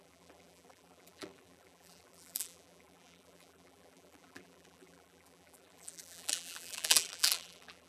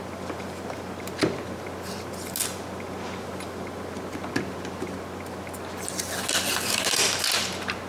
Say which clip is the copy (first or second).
first